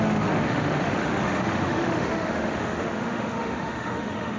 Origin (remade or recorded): remade